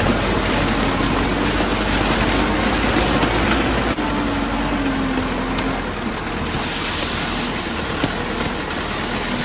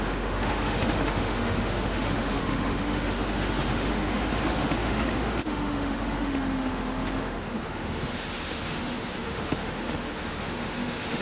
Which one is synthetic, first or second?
second